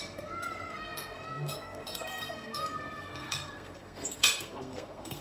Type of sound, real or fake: fake